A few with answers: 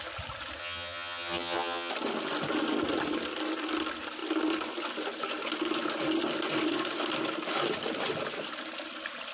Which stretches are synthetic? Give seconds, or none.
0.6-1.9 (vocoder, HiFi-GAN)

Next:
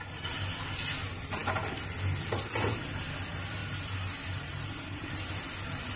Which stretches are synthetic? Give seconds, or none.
3.6-5.3 (vocoder, BigVGAN v2)

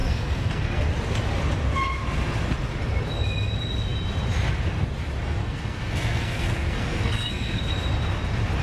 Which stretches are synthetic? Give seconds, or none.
0.0-0.9 (codec, SNAC); 5.4-7.6